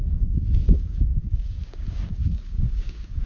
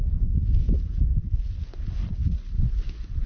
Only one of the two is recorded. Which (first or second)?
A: second